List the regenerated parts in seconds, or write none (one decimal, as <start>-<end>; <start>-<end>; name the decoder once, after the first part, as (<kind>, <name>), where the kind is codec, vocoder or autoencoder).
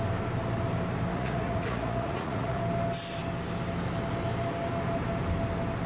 1.1-2.6 (vocoder, Vocos)